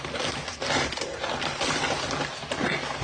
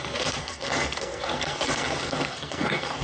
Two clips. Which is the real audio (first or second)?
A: first